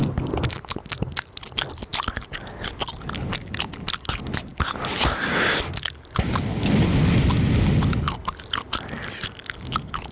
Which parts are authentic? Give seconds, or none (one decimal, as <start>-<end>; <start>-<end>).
0.0-10.1